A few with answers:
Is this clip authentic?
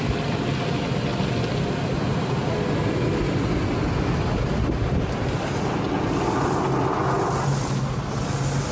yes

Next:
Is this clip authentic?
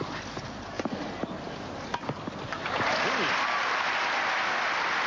yes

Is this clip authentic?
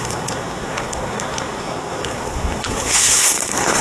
no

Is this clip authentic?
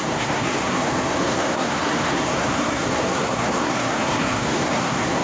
no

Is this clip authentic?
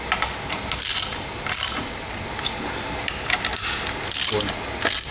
yes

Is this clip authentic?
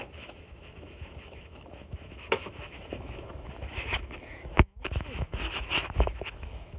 no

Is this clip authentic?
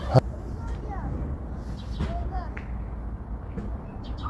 yes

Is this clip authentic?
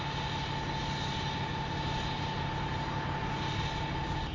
yes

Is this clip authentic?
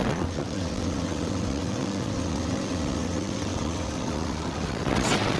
no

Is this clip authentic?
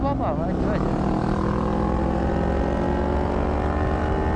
yes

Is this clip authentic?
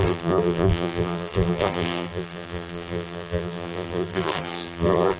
no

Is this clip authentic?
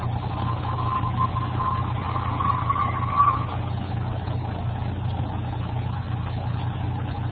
yes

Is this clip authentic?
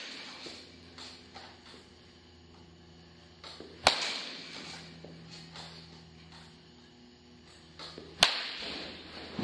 yes